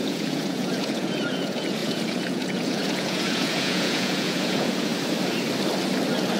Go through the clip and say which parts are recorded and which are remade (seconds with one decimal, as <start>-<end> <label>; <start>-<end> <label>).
0.0-4.9 remade; 4.9-6.4 recorded